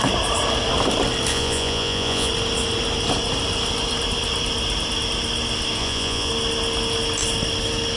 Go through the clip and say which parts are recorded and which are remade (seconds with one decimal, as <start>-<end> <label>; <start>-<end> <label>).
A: 0.0-1.3 recorded; 1.3-2.3 remade; 2.3-5.8 recorded; 5.8-6.3 remade; 6.3-8.0 recorded

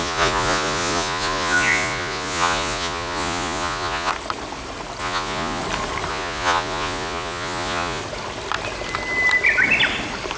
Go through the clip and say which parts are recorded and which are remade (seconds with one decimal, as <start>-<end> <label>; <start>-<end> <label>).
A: 0.0-4.1 remade; 4.1-5.0 recorded; 5.0-5.6 remade; 5.6-6.1 recorded; 6.1-8.0 remade; 8.0-10.4 recorded

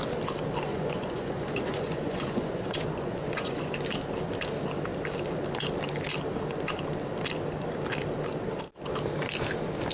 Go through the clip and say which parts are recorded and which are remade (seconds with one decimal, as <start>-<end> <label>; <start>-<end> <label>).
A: 0.0-0.7 recorded; 0.7-3.7 remade; 3.7-9.9 recorded

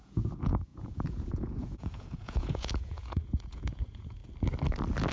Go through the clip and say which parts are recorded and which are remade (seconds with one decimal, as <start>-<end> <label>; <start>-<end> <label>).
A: 0.0-4.2 remade; 4.2-5.1 recorded

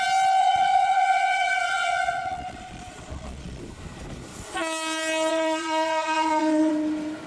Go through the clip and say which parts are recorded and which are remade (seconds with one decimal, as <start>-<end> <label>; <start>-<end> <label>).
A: 0.0-0.4 recorded; 0.4-3.6 remade; 3.6-5.3 recorded; 5.3-6.7 remade; 6.7-7.3 recorded

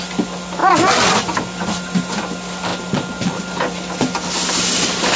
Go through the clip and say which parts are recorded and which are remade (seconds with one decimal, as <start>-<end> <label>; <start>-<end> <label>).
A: 0.0-5.2 recorded

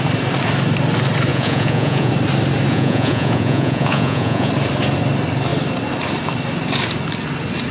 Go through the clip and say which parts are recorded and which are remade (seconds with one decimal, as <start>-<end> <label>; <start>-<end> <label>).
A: 0.0-1.3 recorded; 1.3-2.1 remade; 2.1-2.7 recorded; 2.7-4.5 remade; 4.5-7.7 recorded